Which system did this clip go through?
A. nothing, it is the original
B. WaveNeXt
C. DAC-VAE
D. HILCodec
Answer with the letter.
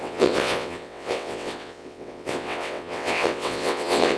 B